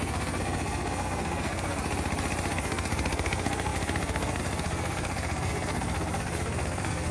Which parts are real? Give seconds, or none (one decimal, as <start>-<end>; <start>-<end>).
1.8-2.5